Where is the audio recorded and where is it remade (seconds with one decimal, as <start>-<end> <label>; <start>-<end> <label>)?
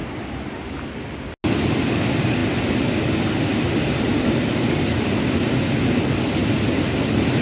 0.0-7.4 recorded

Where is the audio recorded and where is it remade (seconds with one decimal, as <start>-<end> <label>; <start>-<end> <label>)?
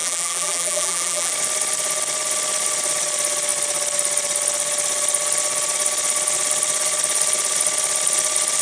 0.0-1.3 remade; 1.3-8.6 recorded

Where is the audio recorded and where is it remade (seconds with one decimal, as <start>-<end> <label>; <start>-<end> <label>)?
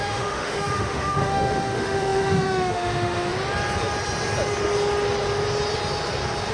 0.0-3.3 remade; 3.3-6.5 recorded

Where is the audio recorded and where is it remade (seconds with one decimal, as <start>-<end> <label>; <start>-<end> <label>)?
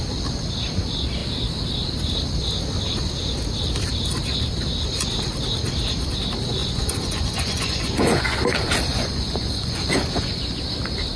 0.0-6.6 recorded; 6.6-8.4 remade; 8.4-8.9 recorded; 8.9-10.6 remade; 10.6-11.2 recorded